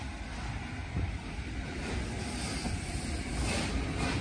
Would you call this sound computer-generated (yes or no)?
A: no